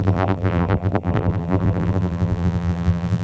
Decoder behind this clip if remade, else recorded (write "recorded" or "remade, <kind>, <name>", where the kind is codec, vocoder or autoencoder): remade, vocoder, BigVGAN v2